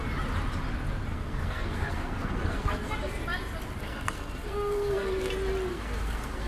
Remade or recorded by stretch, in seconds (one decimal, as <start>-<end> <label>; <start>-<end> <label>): 0.0-1.1 recorded; 1.1-2.9 remade; 2.9-3.8 recorded; 3.8-5.3 remade; 5.3-5.7 recorded; 5.7-6.5 remade